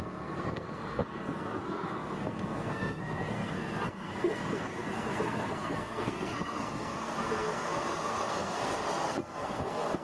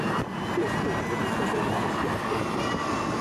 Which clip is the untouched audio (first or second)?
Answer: second